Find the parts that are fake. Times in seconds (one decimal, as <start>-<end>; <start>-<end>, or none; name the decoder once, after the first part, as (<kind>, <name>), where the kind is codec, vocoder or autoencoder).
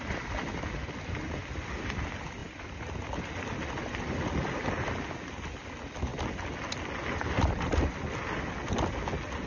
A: none